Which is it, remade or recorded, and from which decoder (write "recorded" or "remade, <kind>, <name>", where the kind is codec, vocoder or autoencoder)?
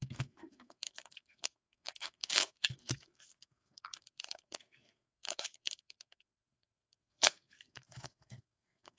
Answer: remade, codec, SNAC